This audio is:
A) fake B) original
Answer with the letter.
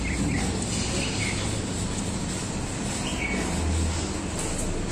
B